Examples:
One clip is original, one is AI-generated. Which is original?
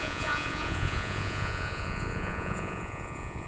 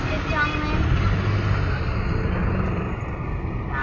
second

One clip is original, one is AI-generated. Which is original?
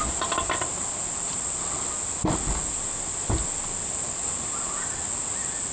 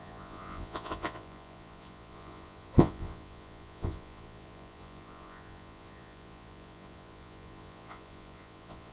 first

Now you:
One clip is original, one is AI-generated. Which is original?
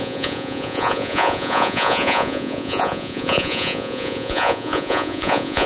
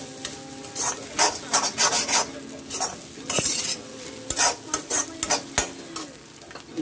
second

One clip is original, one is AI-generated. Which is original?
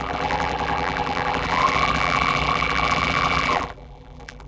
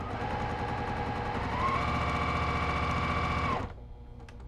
second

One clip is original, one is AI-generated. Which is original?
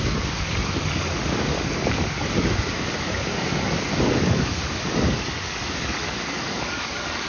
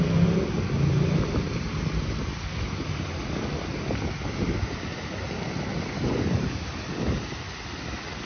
second